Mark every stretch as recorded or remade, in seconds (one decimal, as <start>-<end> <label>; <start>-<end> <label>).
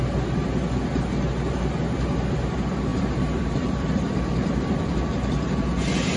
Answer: 0.0-2.9 recorded; 2.9-5.5 remade; 5.5-6.2 recorded